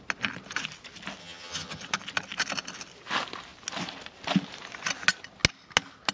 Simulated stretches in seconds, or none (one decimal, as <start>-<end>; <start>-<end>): 1.2-1.8